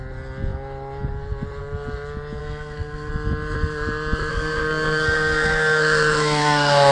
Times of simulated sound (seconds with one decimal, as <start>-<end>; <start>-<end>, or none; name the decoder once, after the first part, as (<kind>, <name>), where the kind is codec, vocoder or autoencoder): 2.4-3.1 (codec, SNAC); 4.3-6.9